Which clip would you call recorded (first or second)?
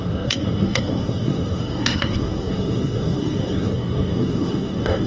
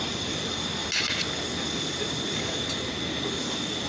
second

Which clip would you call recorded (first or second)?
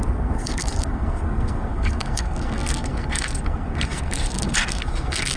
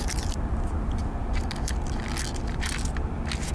second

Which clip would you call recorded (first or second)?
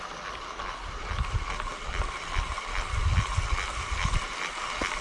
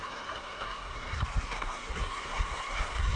first